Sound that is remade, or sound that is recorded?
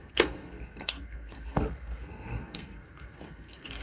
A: remade